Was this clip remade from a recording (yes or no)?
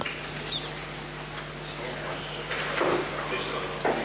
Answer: no